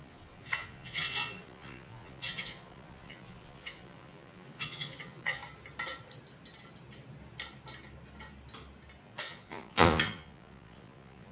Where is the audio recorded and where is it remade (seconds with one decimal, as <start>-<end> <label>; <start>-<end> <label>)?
0.0-5.4 remade; 5.4-9.0 recorded; 9.0-11.3 remade